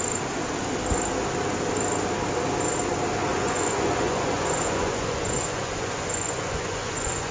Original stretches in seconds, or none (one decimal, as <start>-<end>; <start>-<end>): 0.0-3.3